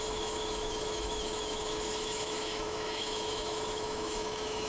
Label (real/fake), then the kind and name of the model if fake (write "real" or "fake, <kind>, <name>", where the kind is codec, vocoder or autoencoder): fake, autoencoder, DAC-VAE